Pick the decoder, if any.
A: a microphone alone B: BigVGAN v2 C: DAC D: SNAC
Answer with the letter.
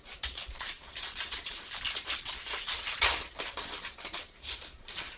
B